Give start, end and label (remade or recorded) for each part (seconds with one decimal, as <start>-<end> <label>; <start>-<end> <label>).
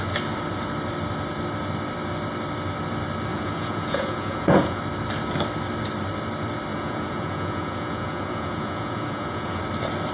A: 0.0-3.3 recorded; 3.3-4.8 remade; 4.8-6.7 recorded; 6.7-9.6 remade; 9.6-10.1 recorded